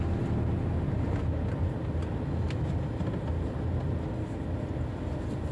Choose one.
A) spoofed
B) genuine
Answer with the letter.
B